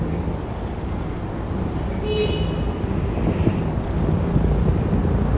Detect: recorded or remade recorded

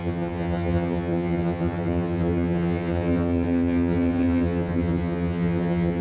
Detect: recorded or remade remade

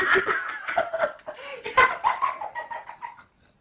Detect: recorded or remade recorded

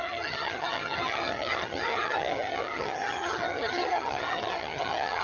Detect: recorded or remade remade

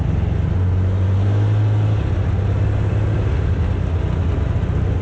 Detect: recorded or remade recorded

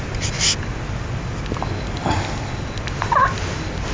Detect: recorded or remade recorded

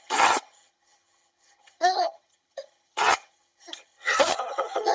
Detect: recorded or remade remade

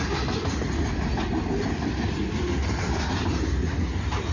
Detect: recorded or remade recorded